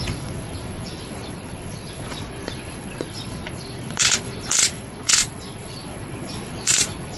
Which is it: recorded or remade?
remade